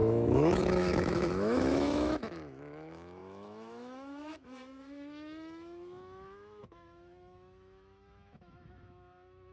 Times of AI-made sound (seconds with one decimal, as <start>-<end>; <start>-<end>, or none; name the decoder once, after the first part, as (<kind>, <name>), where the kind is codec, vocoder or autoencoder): 0.0-9.5 (autoencoder, DAC-VAE)